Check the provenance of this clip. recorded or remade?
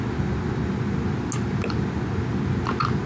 recorded